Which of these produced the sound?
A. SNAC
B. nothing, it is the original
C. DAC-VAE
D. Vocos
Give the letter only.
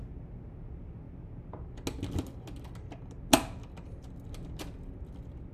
B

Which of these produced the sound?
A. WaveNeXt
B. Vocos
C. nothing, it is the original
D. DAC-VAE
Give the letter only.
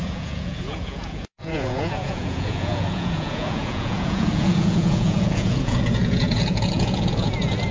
B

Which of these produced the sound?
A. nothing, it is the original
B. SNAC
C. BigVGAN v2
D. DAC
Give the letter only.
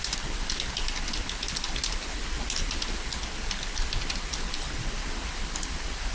A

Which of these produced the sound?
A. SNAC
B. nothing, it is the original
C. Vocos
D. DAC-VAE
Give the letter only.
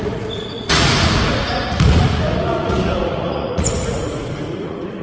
C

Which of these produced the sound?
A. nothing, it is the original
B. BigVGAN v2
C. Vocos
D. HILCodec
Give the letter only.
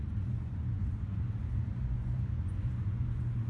C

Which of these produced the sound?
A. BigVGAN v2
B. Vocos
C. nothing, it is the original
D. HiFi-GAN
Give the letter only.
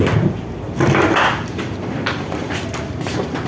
C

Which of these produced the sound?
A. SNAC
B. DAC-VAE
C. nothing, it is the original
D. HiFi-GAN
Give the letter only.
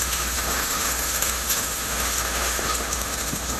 B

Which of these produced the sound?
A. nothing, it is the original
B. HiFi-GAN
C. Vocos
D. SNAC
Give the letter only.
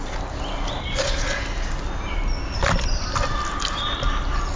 A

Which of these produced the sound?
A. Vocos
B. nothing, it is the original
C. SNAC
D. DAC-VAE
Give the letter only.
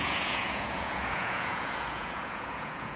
A